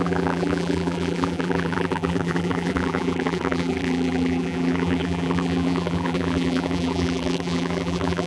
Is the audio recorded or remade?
remade